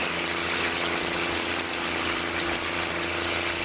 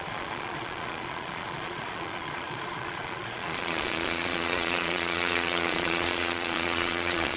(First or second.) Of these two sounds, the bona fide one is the first